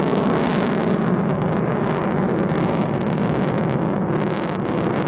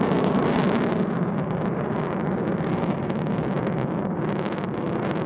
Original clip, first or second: first